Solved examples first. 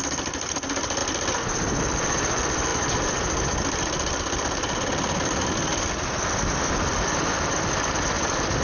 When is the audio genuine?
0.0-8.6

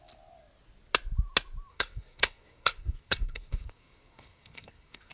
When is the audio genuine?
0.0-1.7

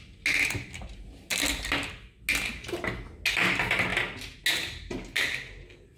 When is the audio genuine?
0.0-6.0

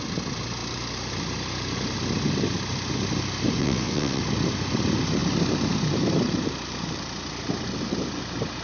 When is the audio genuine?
0.0-3.6; 4.2-8.6

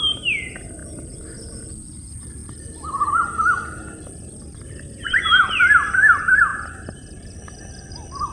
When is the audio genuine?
0.0-2.4; 5.2-6.5; 7.9-8.3

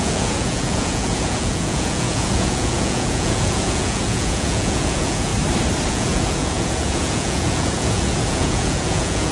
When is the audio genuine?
5.3-5.9

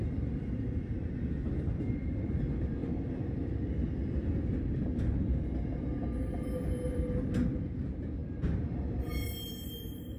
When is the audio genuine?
0.0-10.2